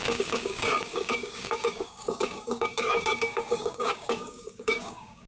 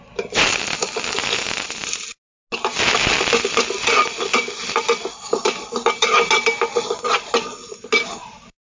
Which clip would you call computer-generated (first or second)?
first